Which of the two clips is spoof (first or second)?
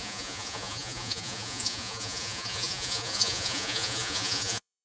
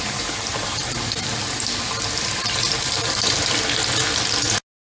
first